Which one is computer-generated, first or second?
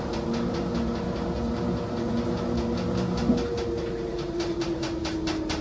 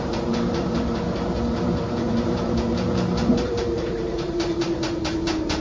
second